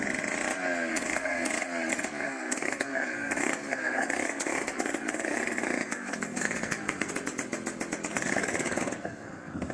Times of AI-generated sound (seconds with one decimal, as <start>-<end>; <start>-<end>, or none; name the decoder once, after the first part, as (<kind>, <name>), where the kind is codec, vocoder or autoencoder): 0.9-1.5 (codec, SNAC); 1.9-7.1; 8.1-9.7